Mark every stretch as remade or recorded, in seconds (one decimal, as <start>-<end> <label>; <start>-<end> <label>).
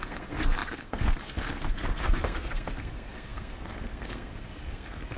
0.0-5.2 remade